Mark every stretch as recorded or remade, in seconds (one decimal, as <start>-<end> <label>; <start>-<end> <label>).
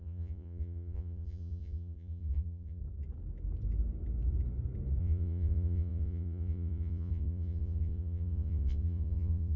0.0-2.8 remade; 2.8-5.0 recorded; 5.0-9.6 remade